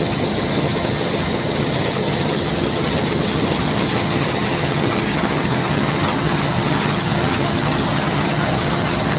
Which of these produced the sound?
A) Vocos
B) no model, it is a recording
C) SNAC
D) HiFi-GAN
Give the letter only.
D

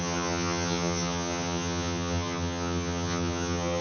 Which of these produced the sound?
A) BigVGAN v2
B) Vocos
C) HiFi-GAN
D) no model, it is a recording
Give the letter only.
C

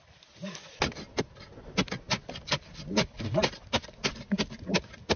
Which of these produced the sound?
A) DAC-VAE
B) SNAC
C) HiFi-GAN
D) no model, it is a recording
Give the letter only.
D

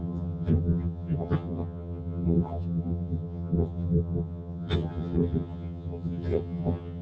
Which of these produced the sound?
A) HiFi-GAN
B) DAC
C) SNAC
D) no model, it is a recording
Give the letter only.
A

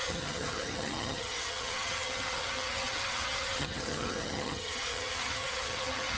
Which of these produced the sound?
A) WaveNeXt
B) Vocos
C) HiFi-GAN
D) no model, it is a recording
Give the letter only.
C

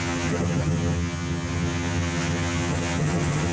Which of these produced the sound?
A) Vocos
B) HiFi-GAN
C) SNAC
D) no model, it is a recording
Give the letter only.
B